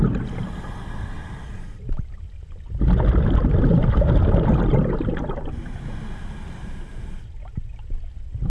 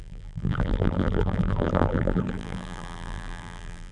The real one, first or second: first